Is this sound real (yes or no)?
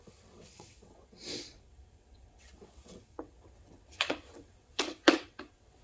no